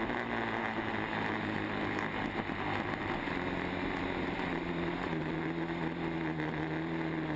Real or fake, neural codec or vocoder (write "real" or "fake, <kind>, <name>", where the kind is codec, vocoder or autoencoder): real